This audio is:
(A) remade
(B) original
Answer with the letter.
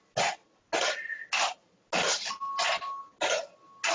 B